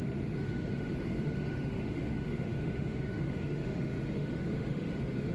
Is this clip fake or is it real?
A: fake